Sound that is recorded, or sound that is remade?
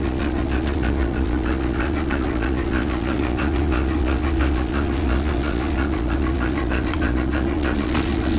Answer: remade